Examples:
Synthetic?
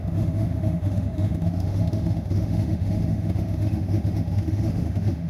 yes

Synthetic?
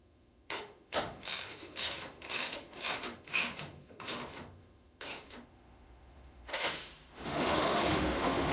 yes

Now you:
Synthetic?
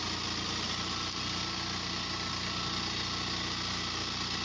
no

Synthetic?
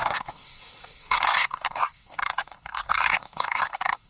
yes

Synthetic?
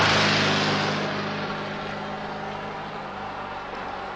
no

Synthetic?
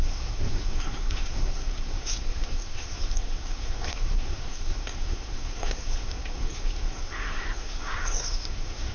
yes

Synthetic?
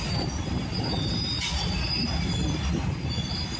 no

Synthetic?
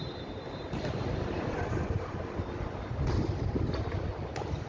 no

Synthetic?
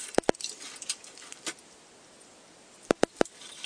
no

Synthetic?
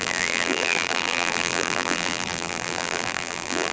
yes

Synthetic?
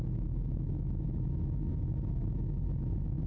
yes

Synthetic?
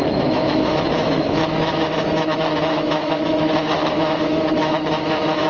yes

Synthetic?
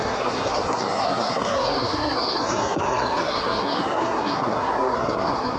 yes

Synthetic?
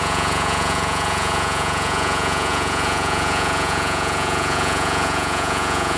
yes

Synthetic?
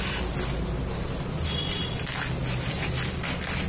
no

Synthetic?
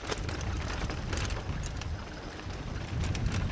no